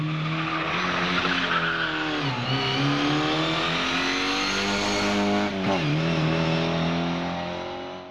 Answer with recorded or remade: recorded